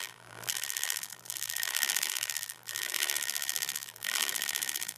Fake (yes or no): yes